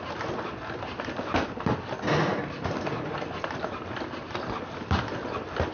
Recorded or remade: recorded